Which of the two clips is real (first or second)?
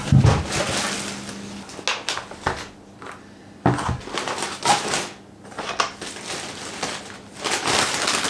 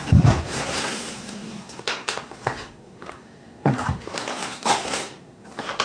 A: first